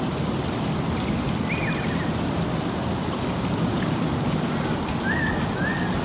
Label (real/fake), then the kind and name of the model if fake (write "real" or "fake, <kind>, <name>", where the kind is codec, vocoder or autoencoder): real